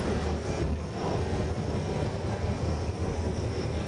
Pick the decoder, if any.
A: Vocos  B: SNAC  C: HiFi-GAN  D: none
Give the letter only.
B